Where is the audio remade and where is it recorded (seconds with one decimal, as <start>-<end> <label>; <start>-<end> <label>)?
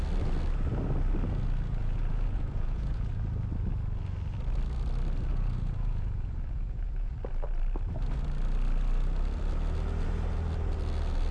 0.0-1.8 recorded; 1.8-3.1 remade; 3.1-5.3 recorded; 5.3-7.1 remade; 7.1-11.3 recorded